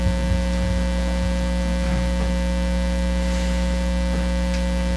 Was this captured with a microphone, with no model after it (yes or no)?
yes